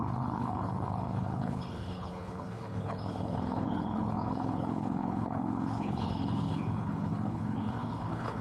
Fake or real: fake